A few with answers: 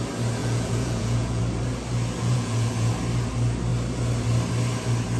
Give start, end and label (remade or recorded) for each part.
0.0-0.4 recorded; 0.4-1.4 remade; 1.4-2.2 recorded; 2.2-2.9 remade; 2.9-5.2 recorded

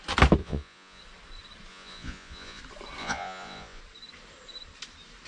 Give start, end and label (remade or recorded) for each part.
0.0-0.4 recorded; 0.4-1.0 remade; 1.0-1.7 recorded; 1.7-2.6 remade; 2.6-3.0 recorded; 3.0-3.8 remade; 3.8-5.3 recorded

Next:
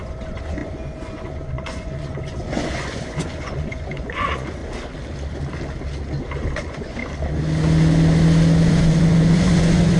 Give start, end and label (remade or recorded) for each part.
0.0-4.6 remade; 4.6-6.6 recorded; 6.6-7.0 remade; 7.0-8.7 recorded; 8.7-10.0 remade